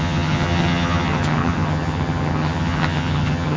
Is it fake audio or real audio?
fake